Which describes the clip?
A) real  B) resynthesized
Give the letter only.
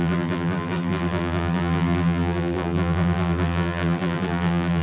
B